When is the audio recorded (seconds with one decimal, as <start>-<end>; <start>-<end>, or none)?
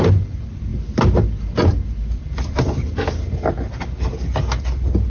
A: 0.0-5.1